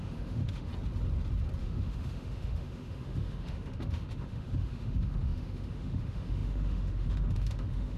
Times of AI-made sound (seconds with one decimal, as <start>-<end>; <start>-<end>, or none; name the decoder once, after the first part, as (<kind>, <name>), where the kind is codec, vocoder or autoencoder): 0.0-0.7 (autoencoder, DAC-VAE); 1.6-8.0